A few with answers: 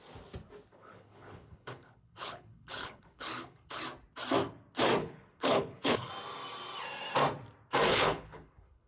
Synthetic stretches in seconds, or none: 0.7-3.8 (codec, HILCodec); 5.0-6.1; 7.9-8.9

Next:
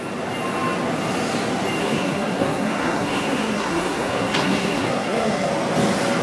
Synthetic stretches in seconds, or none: 1.8-5.5 (codec, SNAC)

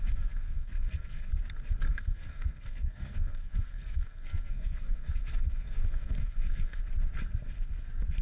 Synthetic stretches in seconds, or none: 0.0-1.3 (codec, SNAC); 1.9-6.8

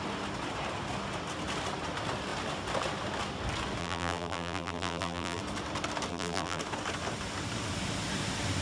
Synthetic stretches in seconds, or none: 3.8-5.4 (vocoder, BigVGAN v2); 6.1-6.6

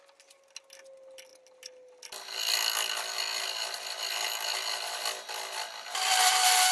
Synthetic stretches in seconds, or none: none